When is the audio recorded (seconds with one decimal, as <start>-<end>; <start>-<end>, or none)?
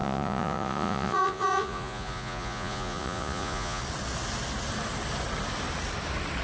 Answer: 3.8-6.4